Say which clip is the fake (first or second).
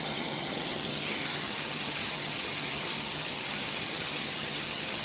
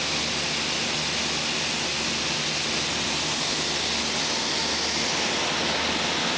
first